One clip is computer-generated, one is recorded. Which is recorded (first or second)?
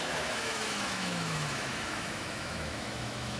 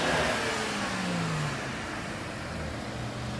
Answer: second